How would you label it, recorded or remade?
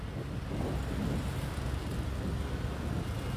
recorded